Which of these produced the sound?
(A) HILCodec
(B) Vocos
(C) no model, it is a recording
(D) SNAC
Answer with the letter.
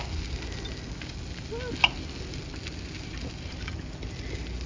C